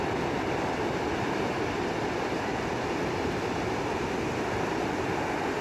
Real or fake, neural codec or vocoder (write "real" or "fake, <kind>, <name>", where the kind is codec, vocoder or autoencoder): real